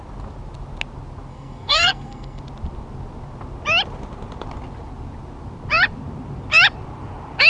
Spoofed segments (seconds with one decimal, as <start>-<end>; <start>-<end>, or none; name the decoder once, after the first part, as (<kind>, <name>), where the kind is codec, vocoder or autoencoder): 1.3-2.4 (codec, SNAC)